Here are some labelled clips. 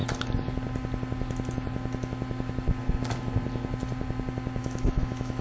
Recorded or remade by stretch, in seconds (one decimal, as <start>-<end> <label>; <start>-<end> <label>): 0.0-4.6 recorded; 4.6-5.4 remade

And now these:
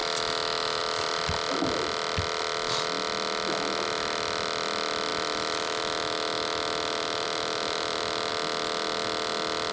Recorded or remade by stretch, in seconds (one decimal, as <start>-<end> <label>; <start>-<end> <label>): 0.0-5.1 recorded; 5.1-8.3 remade; 8.3-9.7 recorded

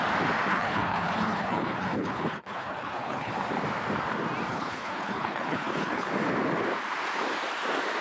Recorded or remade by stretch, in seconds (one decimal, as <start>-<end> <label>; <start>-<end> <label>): 0.0-0.5 recorded; 0.5-3.3 remade; 3.3-4.5 recorded; 4.5-6.1 remade; 6.1-8.0 recorded

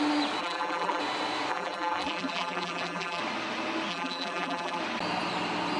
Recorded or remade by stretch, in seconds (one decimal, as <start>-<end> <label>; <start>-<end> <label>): 0.0-0.4 recorded; 0.4-1.0 remade; 1.0-1.5 recorded; 1.5-3.2 remade; 3.2-3.9 recorded; 3.9-4.8 remade; 4.8-5.8 recorded

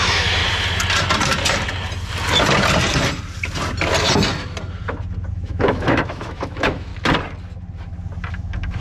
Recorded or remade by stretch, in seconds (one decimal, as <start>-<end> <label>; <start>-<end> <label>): 0.0-0.4 remade; 0.4-5.3 recorded; 5.3-6.9 remade; 6.9-8.3 recorded; 8.3-8.8 remade